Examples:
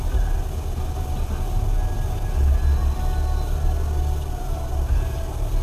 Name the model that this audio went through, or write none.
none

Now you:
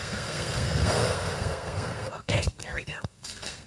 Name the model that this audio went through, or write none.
codec, SNAC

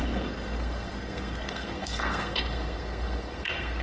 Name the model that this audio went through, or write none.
codec, SNAC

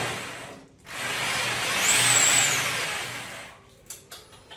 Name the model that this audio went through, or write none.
none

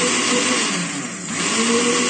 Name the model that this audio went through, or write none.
none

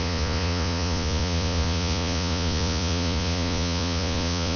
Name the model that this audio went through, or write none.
vocoder, Vocos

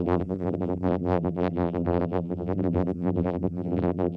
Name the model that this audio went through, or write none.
vocoder, BigVGAN v2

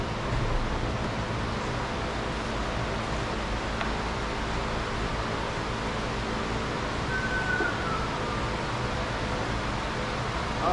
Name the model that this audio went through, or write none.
none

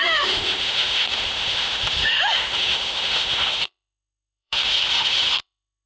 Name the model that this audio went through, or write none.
autoencoder, DAC-VAE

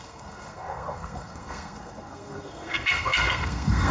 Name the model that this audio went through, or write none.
codec, SNAC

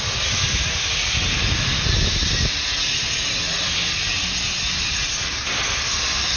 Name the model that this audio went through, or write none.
none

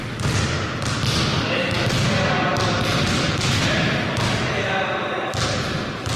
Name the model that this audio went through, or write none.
none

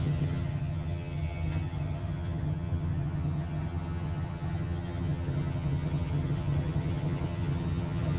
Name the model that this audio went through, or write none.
vocoder, HiFi-GAN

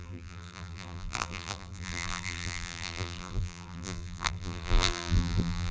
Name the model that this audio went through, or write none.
vocoder, BigVGAN v2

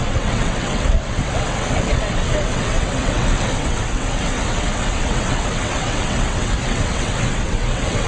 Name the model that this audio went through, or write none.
vocoder, WaveNeXt